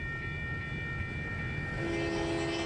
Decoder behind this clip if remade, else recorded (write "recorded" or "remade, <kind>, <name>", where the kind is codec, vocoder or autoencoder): recorded